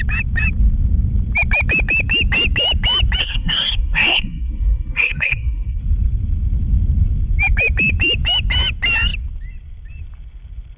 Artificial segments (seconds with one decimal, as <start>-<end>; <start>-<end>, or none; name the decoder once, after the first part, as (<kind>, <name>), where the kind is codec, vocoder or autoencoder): 3.2-5.8 (codec, SNAC)